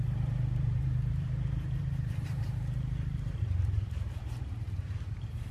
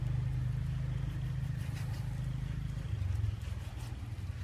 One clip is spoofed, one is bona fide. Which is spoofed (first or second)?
first